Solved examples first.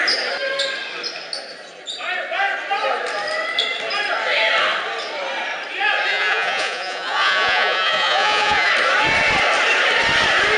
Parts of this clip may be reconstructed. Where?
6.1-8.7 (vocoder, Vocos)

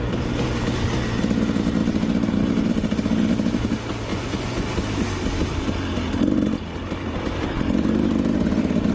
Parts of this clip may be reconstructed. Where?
4.1-4.7 (vocoder, Vocos)

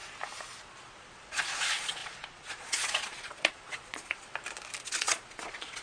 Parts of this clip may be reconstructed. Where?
0.7-4.3 (vocoder, Vocos); 4.8-5.8